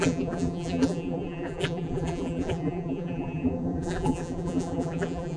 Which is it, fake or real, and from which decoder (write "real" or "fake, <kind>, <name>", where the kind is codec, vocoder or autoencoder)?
fake, vocoder, BigVGAN v2